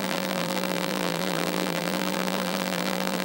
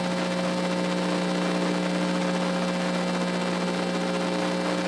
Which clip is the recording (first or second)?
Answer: second